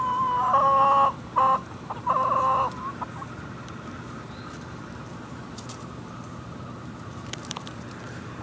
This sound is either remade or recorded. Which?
recorded